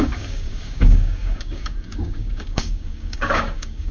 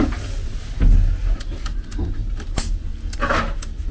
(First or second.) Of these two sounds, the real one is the second